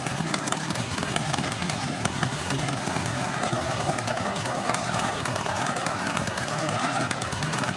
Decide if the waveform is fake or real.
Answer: fake